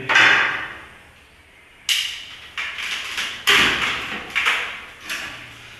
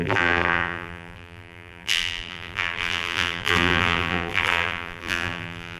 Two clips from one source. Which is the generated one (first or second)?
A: second